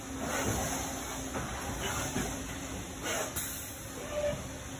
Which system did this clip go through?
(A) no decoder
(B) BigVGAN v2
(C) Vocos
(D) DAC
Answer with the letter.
A